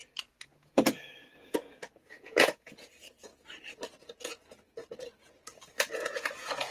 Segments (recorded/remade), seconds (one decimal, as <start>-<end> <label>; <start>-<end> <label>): 0.0-0.5 recorded; 0.5-3.3 remade; 3.3-4.0 recorded; 4.0-6.7 remade